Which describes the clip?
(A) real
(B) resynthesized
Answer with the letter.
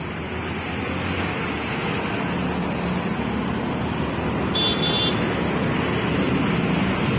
A